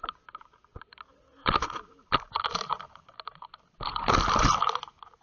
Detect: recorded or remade recorded